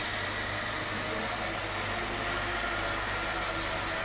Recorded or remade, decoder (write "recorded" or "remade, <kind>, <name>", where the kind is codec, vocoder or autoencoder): recorded